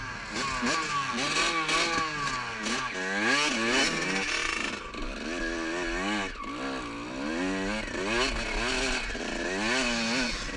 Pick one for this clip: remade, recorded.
recorded